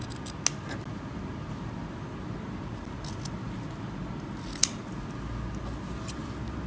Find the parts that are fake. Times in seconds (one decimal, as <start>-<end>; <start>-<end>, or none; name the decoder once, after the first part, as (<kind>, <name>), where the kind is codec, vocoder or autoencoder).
none